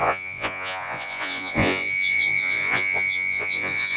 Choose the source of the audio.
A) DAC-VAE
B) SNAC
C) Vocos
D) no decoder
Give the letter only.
C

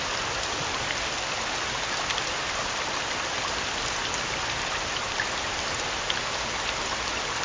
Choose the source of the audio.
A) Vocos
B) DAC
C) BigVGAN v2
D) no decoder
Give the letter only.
D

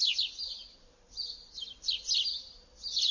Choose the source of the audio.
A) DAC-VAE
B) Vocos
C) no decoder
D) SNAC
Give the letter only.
C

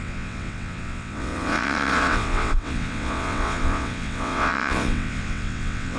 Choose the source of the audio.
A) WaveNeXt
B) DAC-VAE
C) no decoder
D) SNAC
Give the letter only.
A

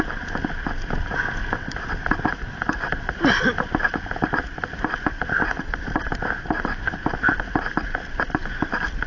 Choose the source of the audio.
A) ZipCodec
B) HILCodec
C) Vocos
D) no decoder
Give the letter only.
D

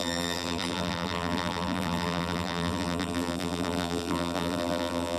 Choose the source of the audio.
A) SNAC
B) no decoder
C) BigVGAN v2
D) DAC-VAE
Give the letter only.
C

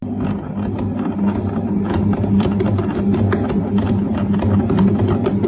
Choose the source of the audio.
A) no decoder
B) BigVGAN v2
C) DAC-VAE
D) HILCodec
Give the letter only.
A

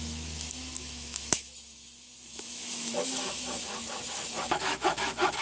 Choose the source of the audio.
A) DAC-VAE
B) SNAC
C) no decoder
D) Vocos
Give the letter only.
A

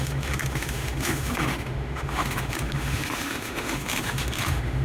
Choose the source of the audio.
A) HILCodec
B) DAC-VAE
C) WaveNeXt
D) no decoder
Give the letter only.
B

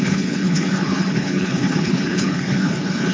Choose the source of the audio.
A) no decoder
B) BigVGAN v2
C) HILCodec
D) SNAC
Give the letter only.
C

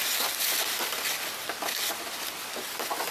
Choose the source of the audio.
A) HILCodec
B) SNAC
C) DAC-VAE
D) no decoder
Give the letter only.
D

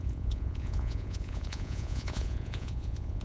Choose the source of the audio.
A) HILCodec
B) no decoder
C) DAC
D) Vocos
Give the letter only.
D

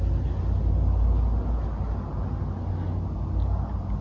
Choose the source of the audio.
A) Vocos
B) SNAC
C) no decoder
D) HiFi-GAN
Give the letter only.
C